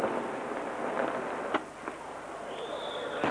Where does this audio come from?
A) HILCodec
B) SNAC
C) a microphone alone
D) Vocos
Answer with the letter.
C